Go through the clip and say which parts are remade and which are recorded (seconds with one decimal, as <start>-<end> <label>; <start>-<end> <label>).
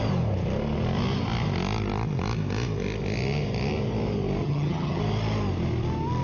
0.0-4.4 recorded; 4.4-5.0 remade; 5.0-6.2 recorded